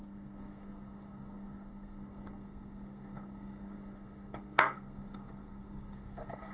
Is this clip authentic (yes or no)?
no